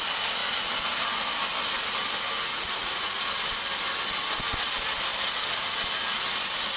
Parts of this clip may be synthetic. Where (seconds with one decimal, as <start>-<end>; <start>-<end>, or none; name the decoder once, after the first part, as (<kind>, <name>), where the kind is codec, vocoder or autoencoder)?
2.5-3.2 (vocoder, Vocos)